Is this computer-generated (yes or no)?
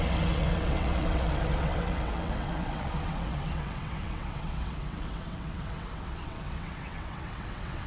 yes